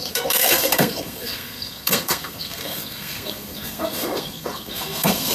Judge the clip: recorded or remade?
remade